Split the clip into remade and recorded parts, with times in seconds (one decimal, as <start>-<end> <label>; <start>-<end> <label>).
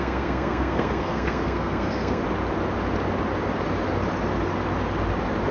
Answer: 0.0-2.2 remade; 2.2-5.5 recorded